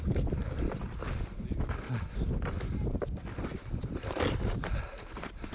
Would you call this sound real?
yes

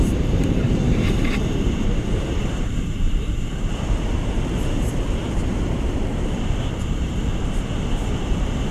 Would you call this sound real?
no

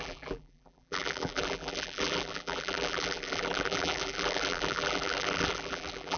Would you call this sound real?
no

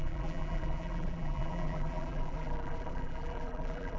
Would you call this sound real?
no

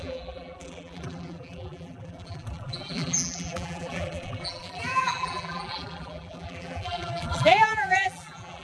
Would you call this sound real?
no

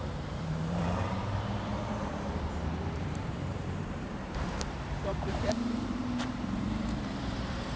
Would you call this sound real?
no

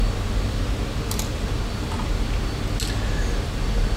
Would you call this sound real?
yes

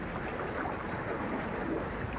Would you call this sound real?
no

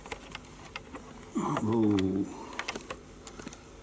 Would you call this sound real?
yes